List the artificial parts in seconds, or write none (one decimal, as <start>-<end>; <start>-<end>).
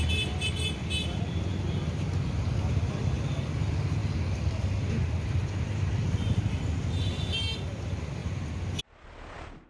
none